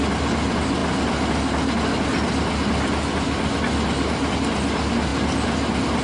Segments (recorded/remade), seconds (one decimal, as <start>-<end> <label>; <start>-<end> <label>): 0.0-6.0 recorded